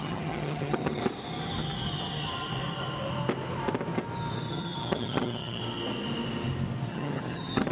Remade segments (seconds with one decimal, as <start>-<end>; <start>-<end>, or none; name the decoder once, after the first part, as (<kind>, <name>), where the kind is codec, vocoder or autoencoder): 0.0-1.0 (vocoder, HiFi-GAN); 4.5-5.6; 6.9-7.7